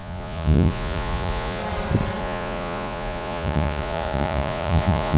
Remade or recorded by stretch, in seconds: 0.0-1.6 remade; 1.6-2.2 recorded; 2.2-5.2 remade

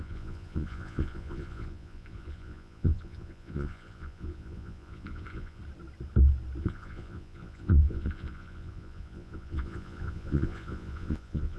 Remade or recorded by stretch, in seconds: 0.0-5.6 remade; 5.6-6.6 recorded; 6.6-11.6 remade

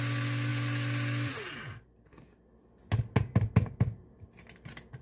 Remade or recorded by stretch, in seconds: 0.0-5.0 recorded